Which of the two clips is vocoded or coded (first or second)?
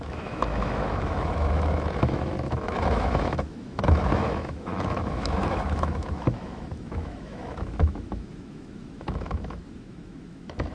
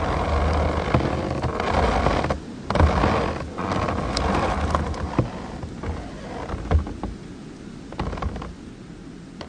first